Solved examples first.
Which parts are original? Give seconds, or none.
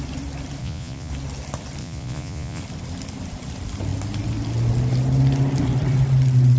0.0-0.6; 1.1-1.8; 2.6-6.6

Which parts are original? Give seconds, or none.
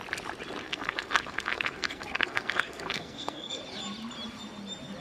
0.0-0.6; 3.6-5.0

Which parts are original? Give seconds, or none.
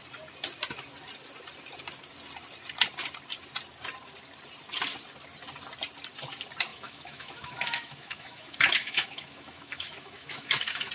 0.0-6.7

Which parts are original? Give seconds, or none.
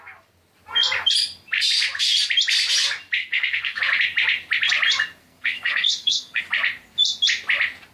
0.0-3.2; 3.8-5.2; 6.4-7.9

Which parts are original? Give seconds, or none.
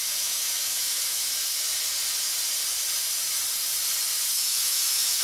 1.2-4.3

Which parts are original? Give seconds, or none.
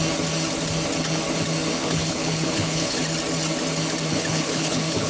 0.0-1.8; 3.0-4.1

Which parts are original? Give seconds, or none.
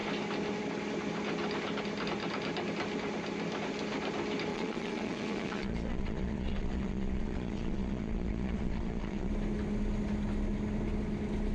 0.0-4.5; 9.3-11.5